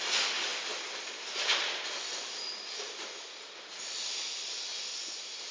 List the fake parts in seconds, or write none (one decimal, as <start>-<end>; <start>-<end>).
none